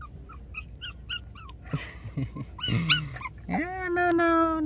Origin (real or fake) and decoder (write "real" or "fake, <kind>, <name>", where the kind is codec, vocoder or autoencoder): real